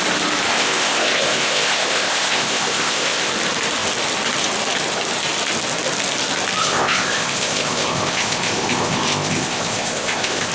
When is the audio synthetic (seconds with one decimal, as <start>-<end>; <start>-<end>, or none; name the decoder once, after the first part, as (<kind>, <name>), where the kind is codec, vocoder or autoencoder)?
0.5-3.3 (codec, ZipCodec); 6.6-10.5